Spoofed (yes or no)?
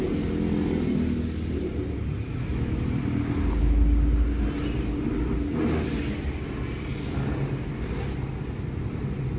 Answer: no